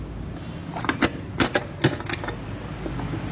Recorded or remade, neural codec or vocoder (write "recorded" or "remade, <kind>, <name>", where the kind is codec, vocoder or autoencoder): recorded